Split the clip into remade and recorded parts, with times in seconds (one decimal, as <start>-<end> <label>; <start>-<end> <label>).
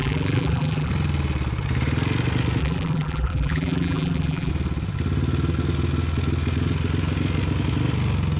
0.0-0.9 remade; 0.9-2.6 recorded; 2.6-4.5 remade; 4.5-8.4 recorded